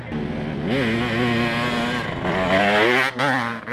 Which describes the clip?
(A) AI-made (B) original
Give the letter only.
B